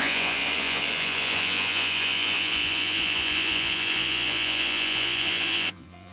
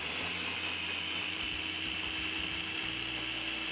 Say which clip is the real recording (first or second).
second